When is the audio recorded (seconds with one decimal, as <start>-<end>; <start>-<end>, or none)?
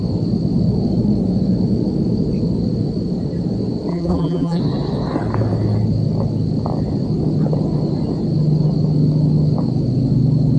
0.0-3.9; 4.6-10.6